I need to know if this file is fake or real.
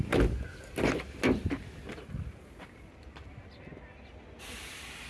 real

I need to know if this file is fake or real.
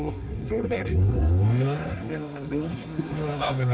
fake